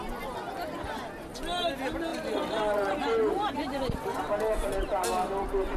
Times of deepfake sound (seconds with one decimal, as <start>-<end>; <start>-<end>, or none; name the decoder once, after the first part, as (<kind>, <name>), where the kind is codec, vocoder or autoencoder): none